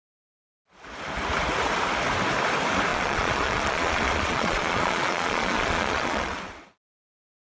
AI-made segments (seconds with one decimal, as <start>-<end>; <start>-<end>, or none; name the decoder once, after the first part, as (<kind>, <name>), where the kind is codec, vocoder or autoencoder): 2.9-6.4 (vocoder, Vocos)